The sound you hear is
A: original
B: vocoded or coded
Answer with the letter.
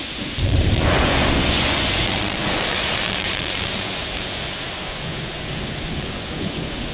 B